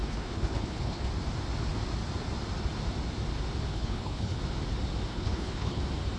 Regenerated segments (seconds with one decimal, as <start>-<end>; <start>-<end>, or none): 0.0-1.1; 3.7-4.4; 5.1-5.8

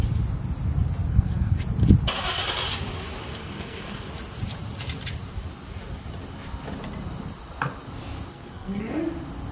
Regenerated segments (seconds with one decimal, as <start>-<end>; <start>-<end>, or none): 1.1-1.6; 3.3-4.1; 8.3-9.0

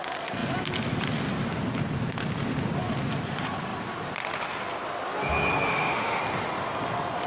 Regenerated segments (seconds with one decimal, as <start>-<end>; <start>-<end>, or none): 5.7-6.2